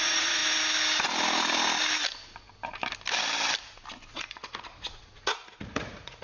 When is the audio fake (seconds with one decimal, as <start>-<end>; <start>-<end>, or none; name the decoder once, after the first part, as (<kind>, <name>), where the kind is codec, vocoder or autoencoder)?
0.0-0.4 (vocoder, Vocos); 4.1-6.2